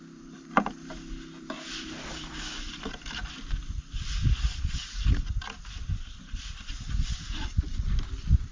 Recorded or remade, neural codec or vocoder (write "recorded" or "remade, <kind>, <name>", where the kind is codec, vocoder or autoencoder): recorded